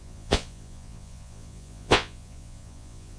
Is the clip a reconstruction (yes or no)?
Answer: yes